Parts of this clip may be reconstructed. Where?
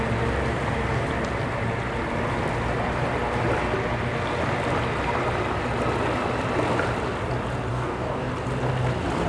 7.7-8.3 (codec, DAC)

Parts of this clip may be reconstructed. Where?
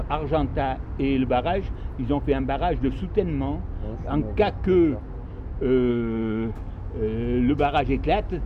5.9-6.7 (codec, DAC)